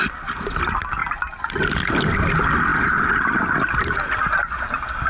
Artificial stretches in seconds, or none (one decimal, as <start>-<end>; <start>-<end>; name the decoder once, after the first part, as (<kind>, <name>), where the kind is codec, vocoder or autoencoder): none